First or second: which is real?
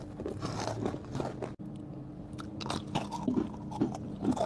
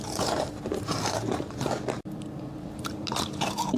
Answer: first